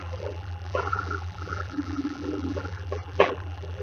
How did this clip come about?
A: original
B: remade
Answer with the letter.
B